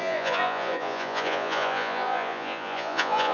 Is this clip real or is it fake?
fake